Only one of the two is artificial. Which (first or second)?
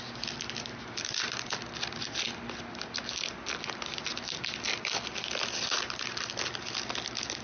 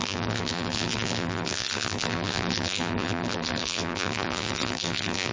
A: second